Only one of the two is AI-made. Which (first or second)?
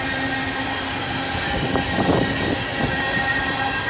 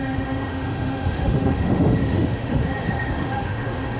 second